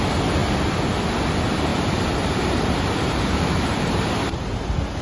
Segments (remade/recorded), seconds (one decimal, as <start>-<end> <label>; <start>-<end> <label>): 0.0-1.7 recorded; 1.7-4.4 remade; 4.4-5.0 recorded